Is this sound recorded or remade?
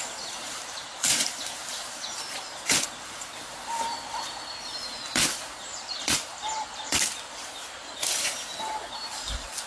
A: remade